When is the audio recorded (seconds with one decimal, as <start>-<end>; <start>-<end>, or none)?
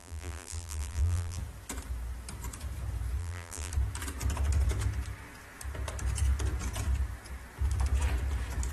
1.4-3.2; 3.7-8.7